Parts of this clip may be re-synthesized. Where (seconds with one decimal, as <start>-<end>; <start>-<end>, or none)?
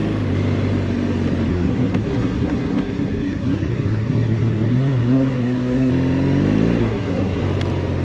1.5-5.9; 6.8-7.4